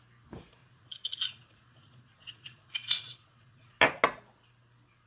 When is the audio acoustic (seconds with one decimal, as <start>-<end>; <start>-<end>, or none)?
0.0-0.6; 3.7-5.1